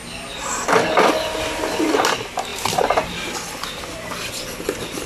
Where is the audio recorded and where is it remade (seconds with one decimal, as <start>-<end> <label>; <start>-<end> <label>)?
0.0-5.1 recorded